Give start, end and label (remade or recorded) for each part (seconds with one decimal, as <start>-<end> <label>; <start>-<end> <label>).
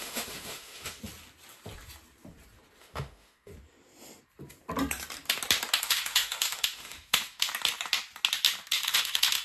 0.0-1.0 remade; 1.0-2.8 recorded; 2.8-3.5 remade; 3.5-5.8 recorded; 5.8-7.5 remade; 7.5-8.8 recorded; 8.8-9.4 remade